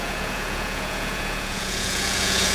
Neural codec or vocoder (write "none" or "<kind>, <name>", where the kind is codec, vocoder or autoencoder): vocoder, Vocos